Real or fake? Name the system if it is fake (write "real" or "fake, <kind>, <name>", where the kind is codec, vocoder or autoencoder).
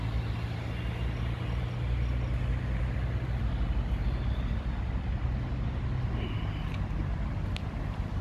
real